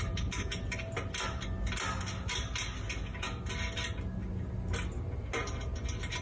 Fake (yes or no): no